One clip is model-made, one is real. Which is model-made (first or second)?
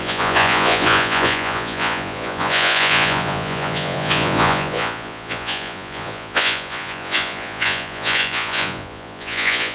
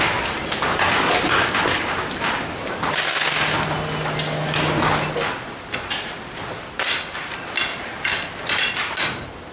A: first